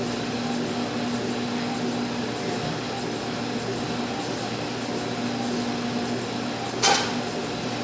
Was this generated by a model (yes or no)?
no